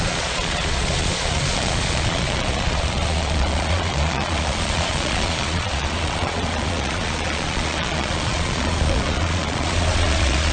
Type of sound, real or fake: fake